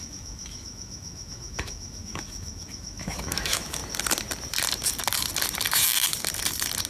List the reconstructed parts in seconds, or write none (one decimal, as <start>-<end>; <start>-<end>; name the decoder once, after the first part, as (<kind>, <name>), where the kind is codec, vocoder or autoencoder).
0.0-3.8 (autoencoder, DAC-VAE)